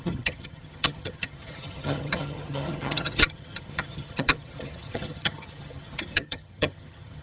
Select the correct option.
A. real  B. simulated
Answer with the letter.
B